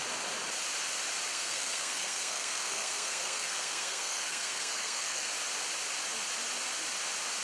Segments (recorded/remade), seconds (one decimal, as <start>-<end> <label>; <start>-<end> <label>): 0.0-1.3 recorded; 1.3-5.3 remade; 5.3-7.4 recorded